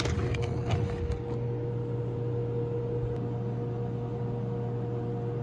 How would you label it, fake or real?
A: real